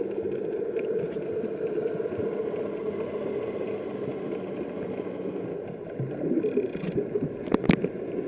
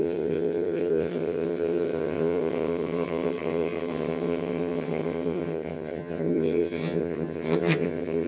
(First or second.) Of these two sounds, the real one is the first